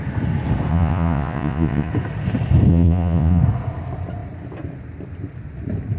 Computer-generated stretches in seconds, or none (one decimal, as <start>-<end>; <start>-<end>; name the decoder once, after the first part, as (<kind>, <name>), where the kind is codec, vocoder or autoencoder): 0.7-1.9 (vocoder, Vocos); 2.7-3.4